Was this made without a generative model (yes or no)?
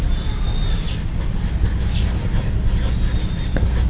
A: yes